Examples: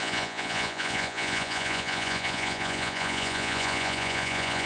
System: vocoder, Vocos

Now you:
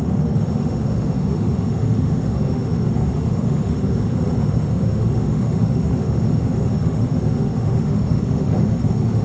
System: autoencoder, DAC-VAE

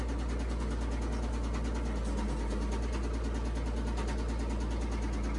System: none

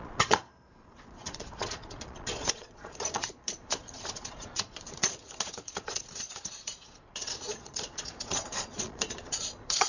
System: vocoder, Vocos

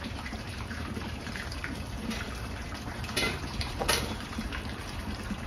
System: vocoder, BigVGAN v2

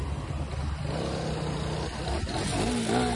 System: none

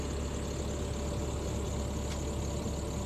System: none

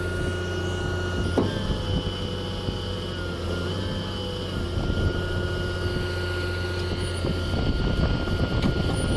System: none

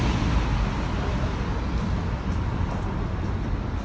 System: none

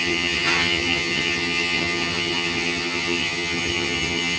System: vocoder, HiFi-GAN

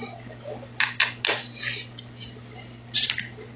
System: none